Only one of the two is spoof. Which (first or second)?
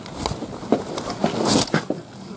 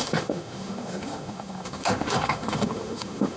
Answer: second